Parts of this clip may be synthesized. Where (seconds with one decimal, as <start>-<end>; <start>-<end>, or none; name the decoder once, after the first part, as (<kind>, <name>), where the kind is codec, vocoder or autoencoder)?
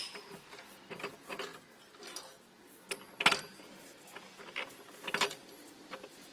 none